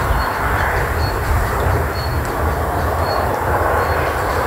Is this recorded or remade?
recorded